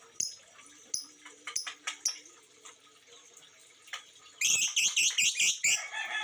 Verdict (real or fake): real